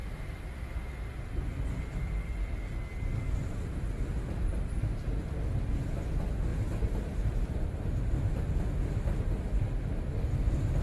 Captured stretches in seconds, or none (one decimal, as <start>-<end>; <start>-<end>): 0.0-4.5; 5.2-6.5; 8.0-10.8